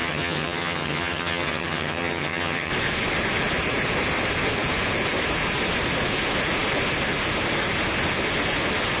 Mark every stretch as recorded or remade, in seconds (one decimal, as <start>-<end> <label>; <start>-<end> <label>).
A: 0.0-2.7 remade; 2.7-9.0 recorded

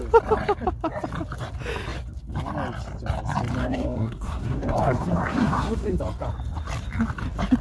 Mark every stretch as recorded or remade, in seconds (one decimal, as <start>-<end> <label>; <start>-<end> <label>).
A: 0.0-3.6 recorded; 3.6-6.0 remade; 6.0-7.6 recorded

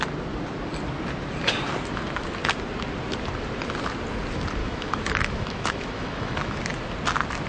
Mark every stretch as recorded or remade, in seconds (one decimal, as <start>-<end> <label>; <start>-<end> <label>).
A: 0.0-4.6 recorded; 4.6-6.6 remade; 6.6-7.5 recorded

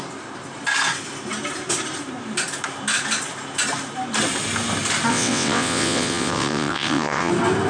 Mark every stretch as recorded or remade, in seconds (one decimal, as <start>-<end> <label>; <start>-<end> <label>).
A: 0.0-5.1 recorded; 5.1-7.3 remade; 7.3-7.7 recorded